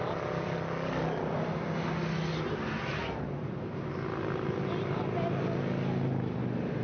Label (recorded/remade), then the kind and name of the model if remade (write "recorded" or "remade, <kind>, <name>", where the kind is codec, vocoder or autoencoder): recorded